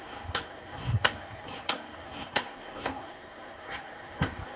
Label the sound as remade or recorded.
remade